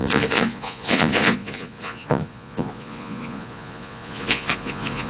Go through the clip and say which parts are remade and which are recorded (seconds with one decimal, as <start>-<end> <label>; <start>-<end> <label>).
0.0-5.1 remade